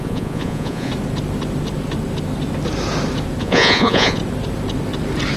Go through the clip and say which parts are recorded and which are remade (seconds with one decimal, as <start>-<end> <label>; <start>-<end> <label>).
0.0-0.9 remade; 0.9-3.4 recorded; 3.4-4.2 remade; 4.2-5.4 recorded